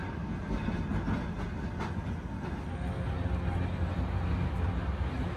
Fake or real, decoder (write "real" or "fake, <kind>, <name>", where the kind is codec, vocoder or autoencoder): real